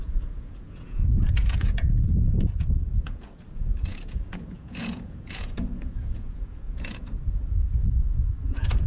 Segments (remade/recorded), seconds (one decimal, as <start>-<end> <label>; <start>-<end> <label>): 0.0-8.9 remade